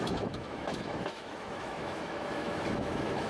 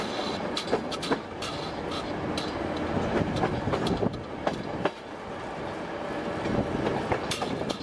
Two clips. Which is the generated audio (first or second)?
first